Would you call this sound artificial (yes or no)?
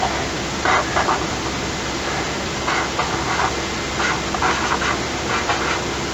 no